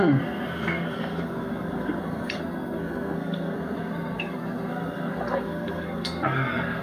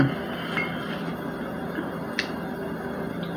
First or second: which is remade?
first